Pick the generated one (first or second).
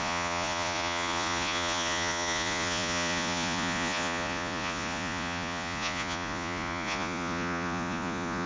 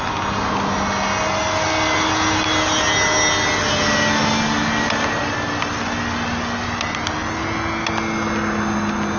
first